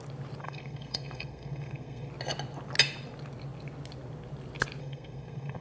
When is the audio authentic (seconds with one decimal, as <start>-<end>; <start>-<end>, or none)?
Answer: 0.0-0.4; 2.1-4.8